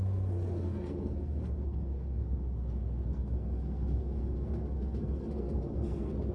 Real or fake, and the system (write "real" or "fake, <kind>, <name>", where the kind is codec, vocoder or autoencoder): fake, codec, SNAC